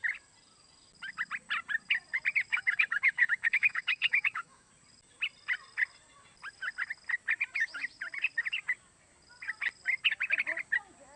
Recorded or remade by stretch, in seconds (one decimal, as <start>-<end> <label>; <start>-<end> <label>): 0.0-2.5 recorded; 2.5-4.7 remade; 4.7-11.2 recorded